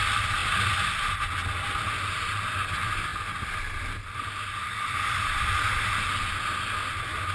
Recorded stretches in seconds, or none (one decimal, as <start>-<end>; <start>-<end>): 0.0-7.3